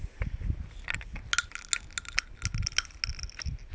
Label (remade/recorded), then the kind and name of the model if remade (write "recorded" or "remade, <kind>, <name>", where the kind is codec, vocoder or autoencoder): recorded